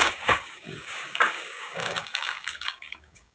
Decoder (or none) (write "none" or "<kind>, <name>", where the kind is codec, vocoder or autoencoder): codec, DAC